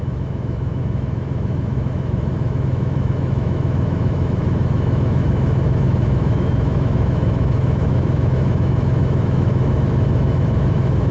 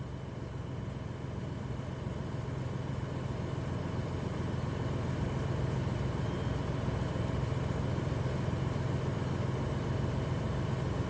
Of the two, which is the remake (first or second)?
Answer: first